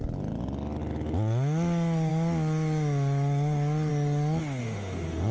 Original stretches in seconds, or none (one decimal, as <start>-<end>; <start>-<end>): 0.0-4.6

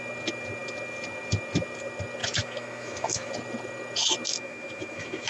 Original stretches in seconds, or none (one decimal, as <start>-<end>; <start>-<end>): 0.0-2.2; 3.3-4.3

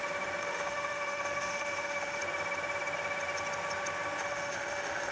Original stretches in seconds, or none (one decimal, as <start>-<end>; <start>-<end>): 0.0-0.4; 2.2-4.2

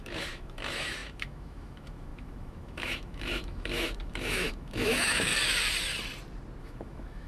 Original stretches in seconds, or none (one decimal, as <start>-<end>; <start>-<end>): 5.3-6.6

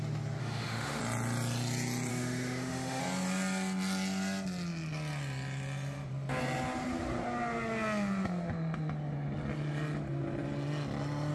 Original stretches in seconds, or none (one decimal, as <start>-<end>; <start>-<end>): 0.0-0.4; 1.0-2.1; 3.0-11.3